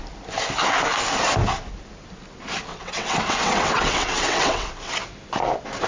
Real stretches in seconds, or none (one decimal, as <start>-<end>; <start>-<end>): 0.0-2.7; 4.9-5.9